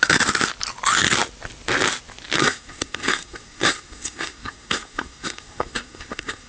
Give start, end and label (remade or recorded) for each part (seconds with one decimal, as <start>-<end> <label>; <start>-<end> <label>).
0.0-2.4 recorded; 2.4-6.5 remade